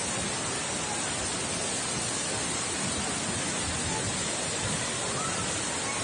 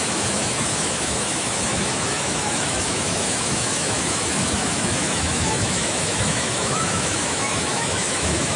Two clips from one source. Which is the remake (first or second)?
second